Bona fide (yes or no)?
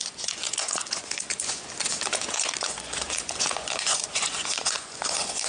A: no